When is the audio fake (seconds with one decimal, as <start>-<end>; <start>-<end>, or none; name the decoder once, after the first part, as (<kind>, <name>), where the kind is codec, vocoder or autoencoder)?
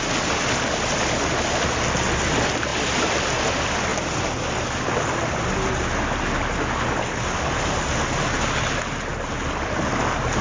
none